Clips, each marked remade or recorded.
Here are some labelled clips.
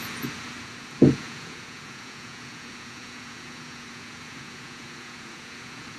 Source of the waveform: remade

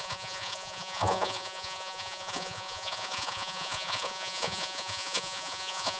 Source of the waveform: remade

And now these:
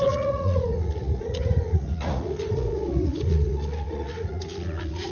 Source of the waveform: remade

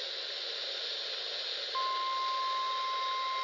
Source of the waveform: recorded